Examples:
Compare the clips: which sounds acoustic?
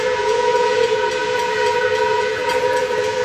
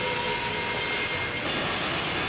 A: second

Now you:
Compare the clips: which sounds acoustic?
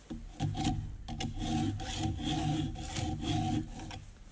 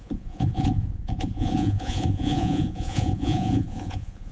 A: first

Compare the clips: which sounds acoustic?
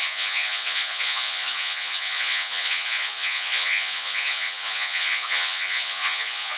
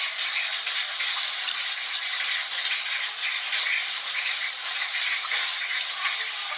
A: second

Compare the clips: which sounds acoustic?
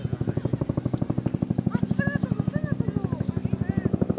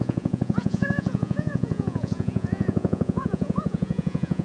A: first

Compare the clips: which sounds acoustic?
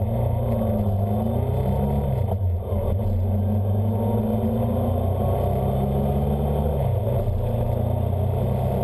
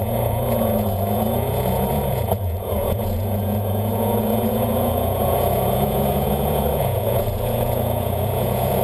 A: first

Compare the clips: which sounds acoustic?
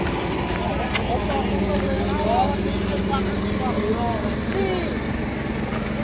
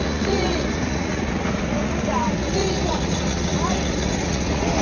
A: first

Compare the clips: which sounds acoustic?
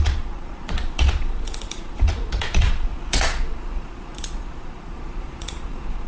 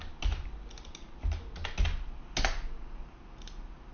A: second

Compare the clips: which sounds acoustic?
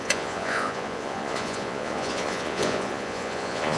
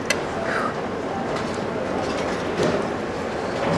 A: second